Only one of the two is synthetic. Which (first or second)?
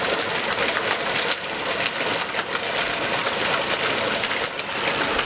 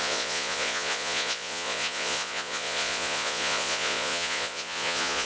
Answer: second